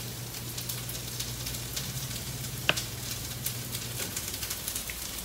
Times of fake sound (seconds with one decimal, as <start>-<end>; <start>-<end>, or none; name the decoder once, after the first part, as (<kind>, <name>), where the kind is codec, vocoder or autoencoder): 1.7-3.2 (vocoder, BigVGAN v2); 4.1-5.2